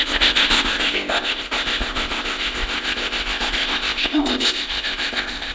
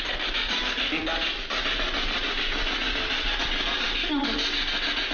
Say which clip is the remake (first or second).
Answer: first